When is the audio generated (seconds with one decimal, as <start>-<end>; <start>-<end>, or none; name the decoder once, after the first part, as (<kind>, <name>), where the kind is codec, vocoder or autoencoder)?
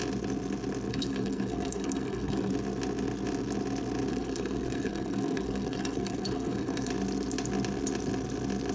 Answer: 0.9-2.5 (codec, SNAC); 4.1-6.9